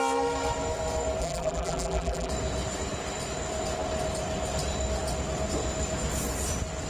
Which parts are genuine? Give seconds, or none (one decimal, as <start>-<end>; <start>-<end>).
0.0-1.2; 2.3-6.9